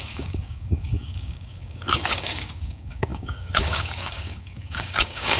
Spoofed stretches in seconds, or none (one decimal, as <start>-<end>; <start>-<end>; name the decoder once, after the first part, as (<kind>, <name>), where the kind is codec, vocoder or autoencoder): 0.0-5.4 (codec, DAC)